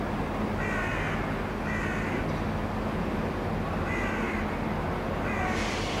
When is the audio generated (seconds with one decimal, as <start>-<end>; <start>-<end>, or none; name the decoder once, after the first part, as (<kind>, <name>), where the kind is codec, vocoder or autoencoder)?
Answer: none